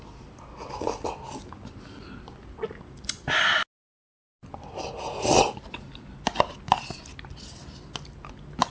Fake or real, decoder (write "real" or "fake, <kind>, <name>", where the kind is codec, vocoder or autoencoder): real